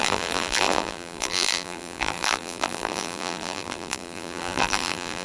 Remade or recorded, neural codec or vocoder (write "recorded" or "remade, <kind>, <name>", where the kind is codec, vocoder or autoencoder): remade, vocoder, BigVGAN v2